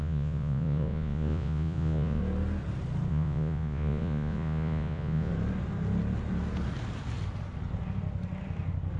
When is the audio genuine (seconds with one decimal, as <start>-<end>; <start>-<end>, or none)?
2.2-3.1; 5.3-9.0